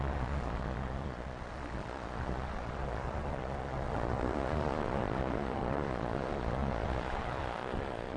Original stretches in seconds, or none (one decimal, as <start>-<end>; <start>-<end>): none